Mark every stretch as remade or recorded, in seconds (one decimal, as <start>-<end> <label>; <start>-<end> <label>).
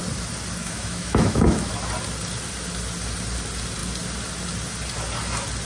0.0-0.6 recorded; 0.6-1.7 remade; 1.7-5.6 recorded